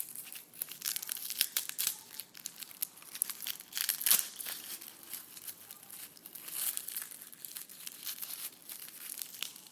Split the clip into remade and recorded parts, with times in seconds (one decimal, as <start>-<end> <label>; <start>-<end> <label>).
0.0-9.7 recorded